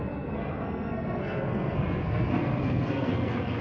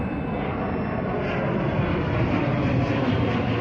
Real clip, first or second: second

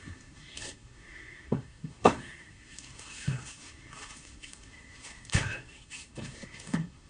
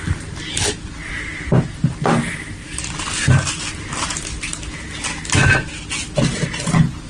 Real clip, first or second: second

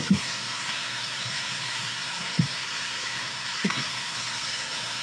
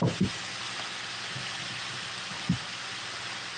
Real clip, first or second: second